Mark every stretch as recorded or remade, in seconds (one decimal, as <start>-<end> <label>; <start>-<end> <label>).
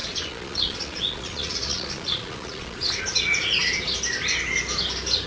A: 0.0-3.0 remade; 3.0-5.3 recorded